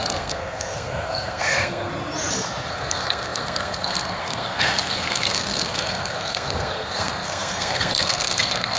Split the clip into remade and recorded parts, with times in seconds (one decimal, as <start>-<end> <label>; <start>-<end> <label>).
0.0-1.9 remade; 1.9-2.7 recorded; 2.7-8.8 remade